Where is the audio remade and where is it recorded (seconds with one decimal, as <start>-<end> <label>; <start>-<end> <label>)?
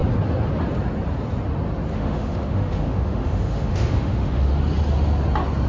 0.0-1.9 recorded; 1.9-4.6 remade; 4.6-5.7 recorded